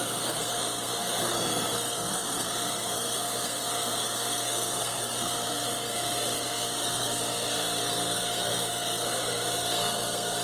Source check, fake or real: fake